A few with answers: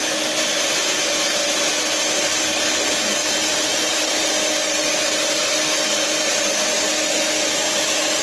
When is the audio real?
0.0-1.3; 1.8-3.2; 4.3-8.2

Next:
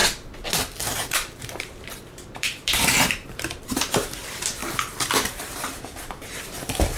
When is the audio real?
0.0-0.6; 4.6-5.3

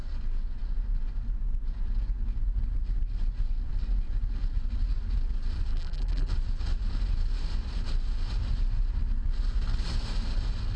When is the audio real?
0.0-5.7; 6.3-10.8

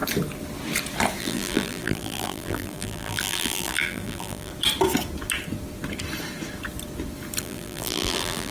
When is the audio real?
0.0-1.2; 4.5-7.4

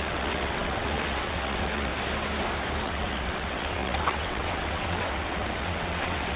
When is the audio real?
1.9-2.8